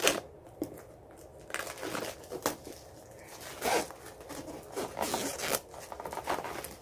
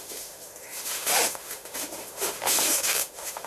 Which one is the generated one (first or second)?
second